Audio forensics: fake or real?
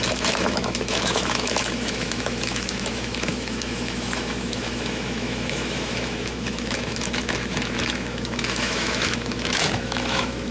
fake